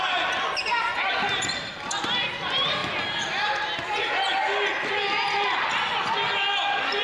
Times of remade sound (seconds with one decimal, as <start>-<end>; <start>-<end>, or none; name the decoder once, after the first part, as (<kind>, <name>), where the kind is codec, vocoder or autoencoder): none